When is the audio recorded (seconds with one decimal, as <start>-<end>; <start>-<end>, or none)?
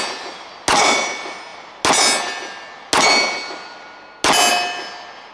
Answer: 0.0-5.3